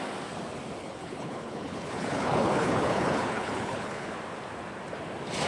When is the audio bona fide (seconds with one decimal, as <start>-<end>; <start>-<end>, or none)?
0.0-0.8; 4.1-5.5